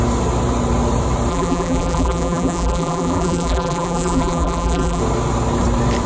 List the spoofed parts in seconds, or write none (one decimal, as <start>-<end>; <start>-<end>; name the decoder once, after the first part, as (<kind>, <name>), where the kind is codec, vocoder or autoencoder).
1.3-5.0 (vocoder, BigVGAN v2)